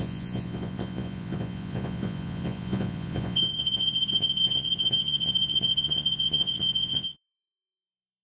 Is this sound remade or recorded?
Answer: remade